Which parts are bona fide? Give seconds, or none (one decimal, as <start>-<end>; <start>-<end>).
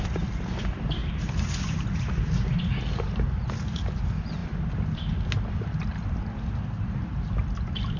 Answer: 0.0-8.0